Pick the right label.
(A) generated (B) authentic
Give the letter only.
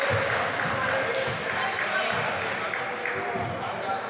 B